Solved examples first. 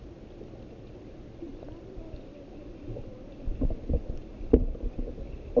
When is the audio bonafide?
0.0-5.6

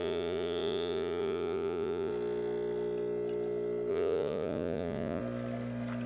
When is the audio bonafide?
2.1-3.9; 5.2-6.1